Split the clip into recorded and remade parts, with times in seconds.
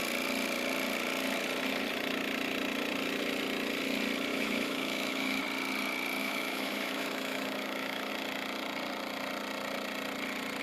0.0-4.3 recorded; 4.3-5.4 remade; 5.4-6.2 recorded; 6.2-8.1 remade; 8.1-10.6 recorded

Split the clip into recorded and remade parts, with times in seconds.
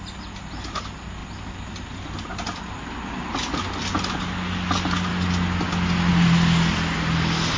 0.0-7.6 recorded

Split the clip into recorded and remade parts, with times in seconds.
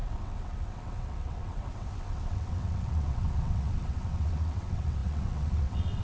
0.0-6.0 remade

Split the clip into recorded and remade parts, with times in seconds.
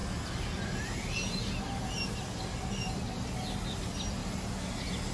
0.0-5.1 recorded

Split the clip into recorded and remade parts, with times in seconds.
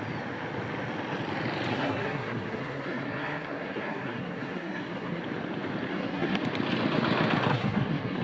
0.0-1.7 recorded; 1.7-5.2 remade; 5.2-5.9 recorded; 5.9-6.4 remade; 6.4-7.5 recorded; 7.5-8.2 remade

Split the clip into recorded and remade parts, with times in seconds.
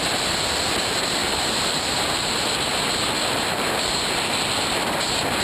0.0-1.2 recorded; 1.2-2.3 remade; 2.3-3.5 recorded; 3.5-4.1 remade; 4.1-5.4 recorded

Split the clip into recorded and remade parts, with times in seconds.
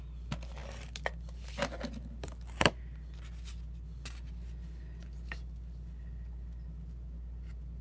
0.0-7.8 recorded